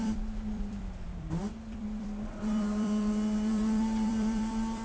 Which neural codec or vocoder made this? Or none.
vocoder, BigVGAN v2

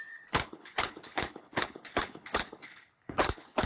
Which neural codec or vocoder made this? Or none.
codec, HILCodec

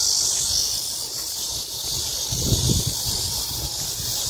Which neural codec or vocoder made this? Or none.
none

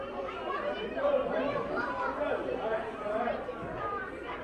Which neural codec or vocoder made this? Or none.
vocoder, BigVGAN v2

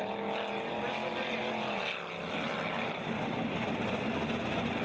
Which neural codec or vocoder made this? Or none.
none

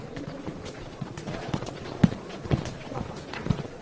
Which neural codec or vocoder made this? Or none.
vocoder, Vocos